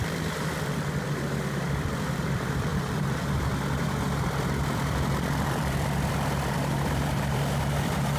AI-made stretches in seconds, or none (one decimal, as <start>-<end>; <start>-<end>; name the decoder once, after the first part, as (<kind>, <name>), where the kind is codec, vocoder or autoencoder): 0.0-8.2 (vocoder, BigVGAN v2)